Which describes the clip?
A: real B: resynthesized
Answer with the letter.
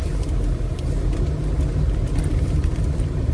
A